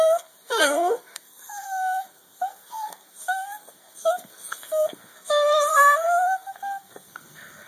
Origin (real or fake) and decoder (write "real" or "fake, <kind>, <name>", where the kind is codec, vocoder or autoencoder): fake, codec, SNAC